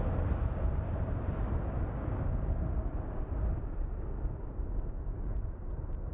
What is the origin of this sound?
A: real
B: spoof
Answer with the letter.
A